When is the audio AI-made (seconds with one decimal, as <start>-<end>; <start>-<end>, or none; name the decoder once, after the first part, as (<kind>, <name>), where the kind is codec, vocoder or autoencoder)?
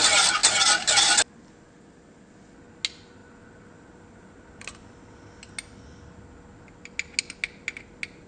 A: none